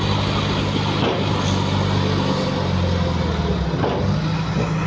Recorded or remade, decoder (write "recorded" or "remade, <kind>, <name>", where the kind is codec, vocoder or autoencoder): recorded